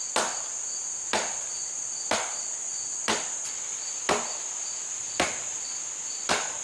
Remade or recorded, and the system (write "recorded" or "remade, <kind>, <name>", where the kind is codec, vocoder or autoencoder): recorded